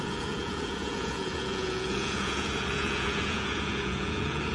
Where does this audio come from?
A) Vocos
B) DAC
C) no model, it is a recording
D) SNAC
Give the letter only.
A